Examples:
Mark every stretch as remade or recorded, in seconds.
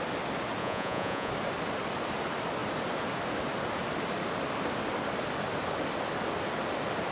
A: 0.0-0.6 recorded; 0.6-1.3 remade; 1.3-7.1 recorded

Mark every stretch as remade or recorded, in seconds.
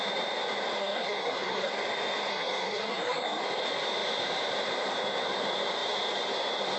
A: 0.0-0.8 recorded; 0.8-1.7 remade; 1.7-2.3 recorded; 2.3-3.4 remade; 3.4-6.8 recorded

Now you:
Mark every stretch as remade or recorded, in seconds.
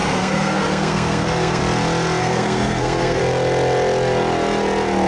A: 0.0-1.6 remade; 1.6-2.2 recorded; 2.2-3.2 remade; 3.2-5.1 recorded